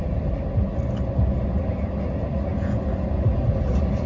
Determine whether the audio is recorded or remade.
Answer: recorded